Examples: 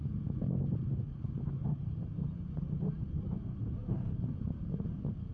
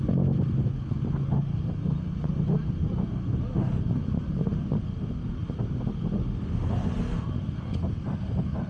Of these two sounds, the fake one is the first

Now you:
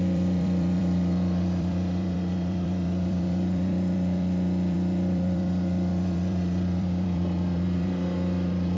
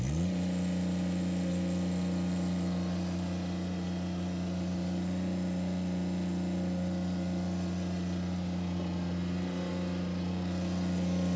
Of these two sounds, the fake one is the first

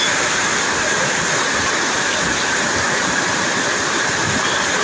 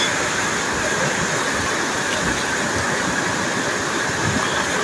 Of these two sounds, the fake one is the first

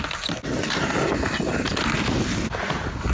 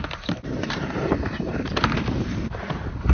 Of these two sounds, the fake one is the second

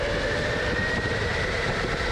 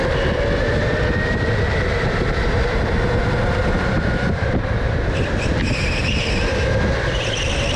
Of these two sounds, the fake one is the first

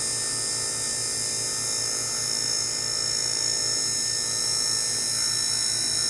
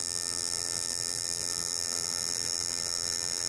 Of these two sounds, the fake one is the second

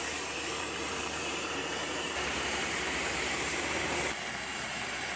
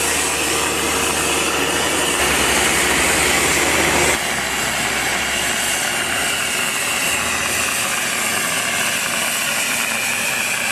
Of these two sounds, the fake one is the first